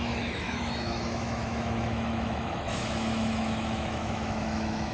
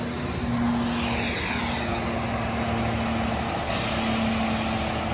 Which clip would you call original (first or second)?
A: second